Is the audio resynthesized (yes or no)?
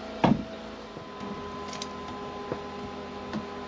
no